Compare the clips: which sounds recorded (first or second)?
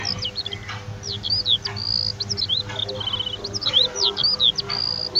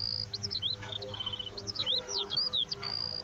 first